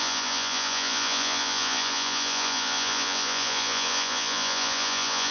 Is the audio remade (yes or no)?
yes